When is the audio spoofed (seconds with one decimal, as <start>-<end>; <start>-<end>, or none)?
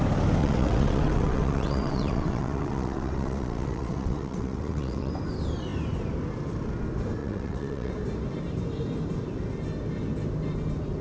0.4-5.1; 7.2-7.9